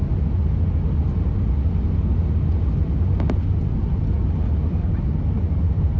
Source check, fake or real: real